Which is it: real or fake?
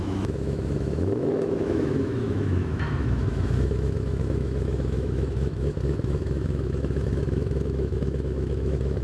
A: fake